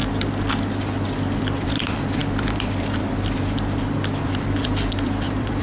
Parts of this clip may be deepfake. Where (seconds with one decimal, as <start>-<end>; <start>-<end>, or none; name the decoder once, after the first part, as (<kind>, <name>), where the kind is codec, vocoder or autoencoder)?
1.4-5.6 (vocoder, BigVGAN v2)